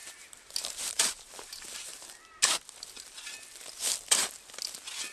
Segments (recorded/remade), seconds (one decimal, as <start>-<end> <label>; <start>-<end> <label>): 0.0-2.2 remade; 2.2-5.1 recorded